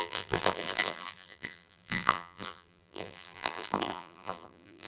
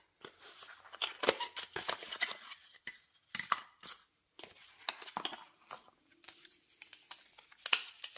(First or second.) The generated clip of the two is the first